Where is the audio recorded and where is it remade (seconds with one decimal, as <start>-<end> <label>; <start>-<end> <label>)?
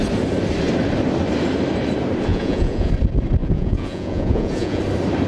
0.0-2.3 recorded; 2.3-2.9 remade; 2.9-3.4 recorded; 3.4-4.8 remade; 4.8-5.3 recorded